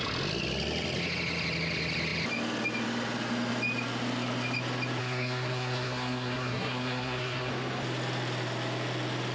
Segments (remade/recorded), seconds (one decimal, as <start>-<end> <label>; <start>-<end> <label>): 0.0-5.0 recorded; 5.0-7.5 remade; 7.5-9.3 recorded

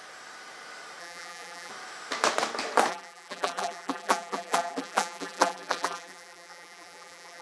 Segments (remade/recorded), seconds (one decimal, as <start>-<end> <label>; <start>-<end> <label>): 0.0-1.0 recorded; 1.0-1.7 remade; 1.7-2.9 recorded; 2.9-7.4 remade

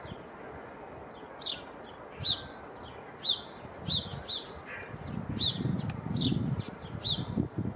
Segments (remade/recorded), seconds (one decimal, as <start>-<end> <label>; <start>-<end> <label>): 0.0-7.8 recorded

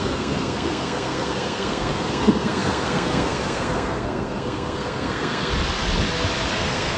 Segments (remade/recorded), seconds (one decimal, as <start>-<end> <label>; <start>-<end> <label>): 0.0-5.5 remade; 5.5-6.5 recorded; 6.5-7.0 remade

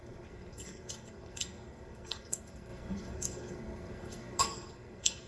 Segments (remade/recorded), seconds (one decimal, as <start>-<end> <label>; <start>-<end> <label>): 0.0-5.3 remade